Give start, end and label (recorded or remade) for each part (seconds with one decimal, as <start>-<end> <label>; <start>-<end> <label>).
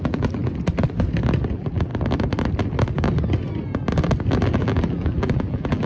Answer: 0.0-0.4 remade; 0.4-1.5 recorded; 1.5-1.9 remade; 1.9-4.6 recorded; 4.6-5.9 remade